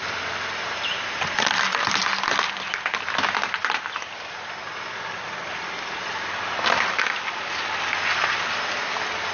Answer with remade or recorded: recorded